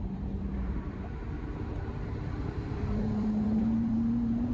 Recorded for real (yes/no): no